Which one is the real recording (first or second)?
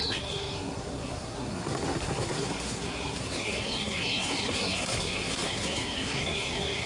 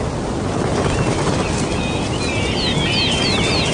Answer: second